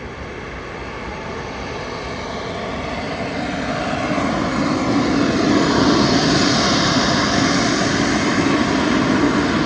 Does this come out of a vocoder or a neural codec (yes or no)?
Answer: no